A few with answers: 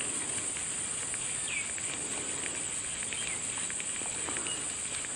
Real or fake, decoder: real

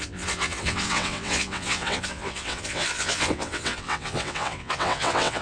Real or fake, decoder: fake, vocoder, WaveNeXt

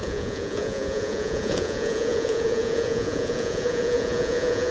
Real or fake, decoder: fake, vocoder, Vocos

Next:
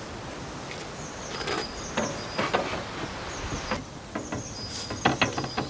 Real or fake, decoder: real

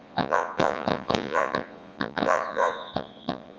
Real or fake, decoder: fake, vocoder, Vocos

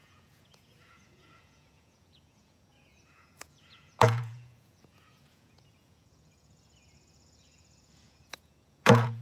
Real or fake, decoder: fake, vocoder, Vocos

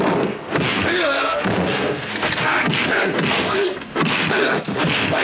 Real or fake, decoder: fake, codec, SNAC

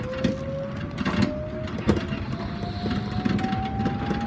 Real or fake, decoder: real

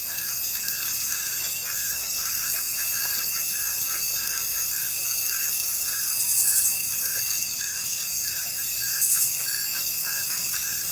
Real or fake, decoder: fake, codec, SNAC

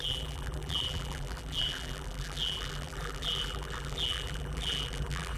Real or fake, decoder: fake, vocoder, BigVGAN v2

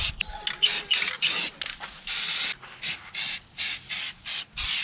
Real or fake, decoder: real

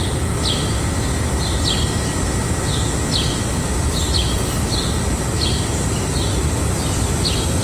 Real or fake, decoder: real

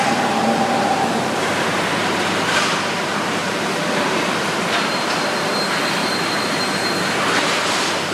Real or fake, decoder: fake, vocoder, BigVGAN v2